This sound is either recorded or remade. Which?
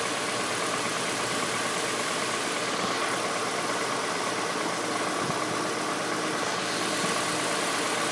recorded